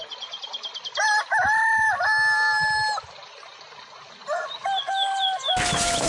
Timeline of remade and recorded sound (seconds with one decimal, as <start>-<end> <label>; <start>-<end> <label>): 0.0-6.1 recorded